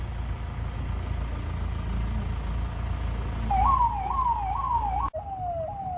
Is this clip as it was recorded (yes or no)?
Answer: yes